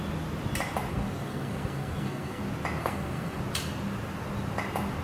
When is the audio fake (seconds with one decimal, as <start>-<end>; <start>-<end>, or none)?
0.9-2.4; 2.8-3.4